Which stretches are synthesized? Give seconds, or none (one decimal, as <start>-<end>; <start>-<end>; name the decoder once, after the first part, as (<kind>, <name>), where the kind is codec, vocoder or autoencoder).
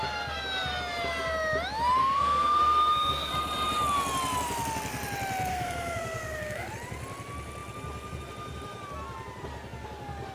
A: 2.0-3.3 (codec, SNAC); 5.5-6.7